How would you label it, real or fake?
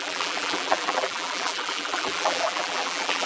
fake